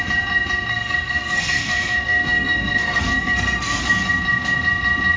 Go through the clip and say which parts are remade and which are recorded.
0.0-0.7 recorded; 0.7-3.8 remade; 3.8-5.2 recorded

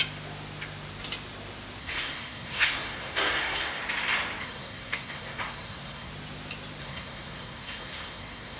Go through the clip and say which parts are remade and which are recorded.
0.0-1.8 recorded; 1.8-3.8 remade; 3.8-4.4 recorded; 4.4-6.1 remade; 6.1-6.8 recorded; 6.8-8.6 remade

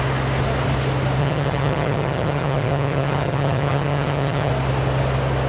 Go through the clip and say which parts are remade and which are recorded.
0.0-1.2 recorded; 1.2-4.5 remade; 4.5-5.5 recorded

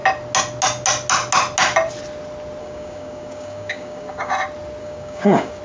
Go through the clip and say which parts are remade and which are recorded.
0.0-2.6 recorded; 2.6-4.3 remade; 4.3-4.8 recorded; 4.8-5.6 remade

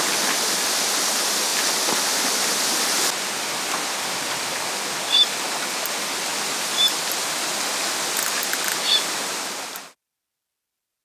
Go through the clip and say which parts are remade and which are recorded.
0.0-11.0 recorded